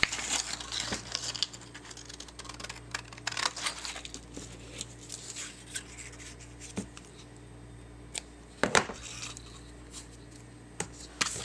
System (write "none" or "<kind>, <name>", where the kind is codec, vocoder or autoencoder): none